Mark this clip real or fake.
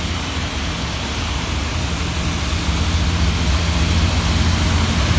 real